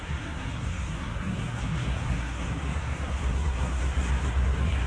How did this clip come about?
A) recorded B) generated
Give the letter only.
B